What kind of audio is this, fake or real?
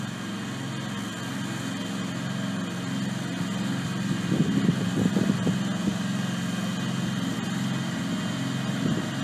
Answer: real